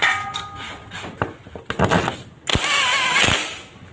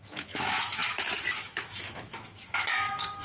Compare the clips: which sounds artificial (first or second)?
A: second